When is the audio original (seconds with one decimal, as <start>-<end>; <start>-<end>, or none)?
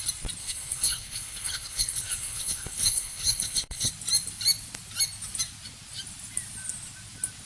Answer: 0.0-0.4; 3.9-7.5